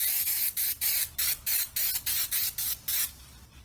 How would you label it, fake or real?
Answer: real